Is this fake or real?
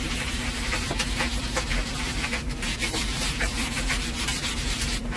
fake